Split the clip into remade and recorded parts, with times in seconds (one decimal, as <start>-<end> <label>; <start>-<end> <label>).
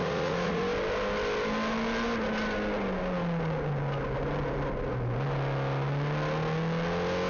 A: 0.0-0.6 remade; 0.6-7.3 recorded